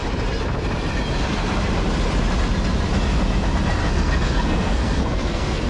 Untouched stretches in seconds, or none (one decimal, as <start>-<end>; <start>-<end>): 0.0-3.8